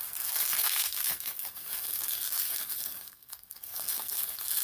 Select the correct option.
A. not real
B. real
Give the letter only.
A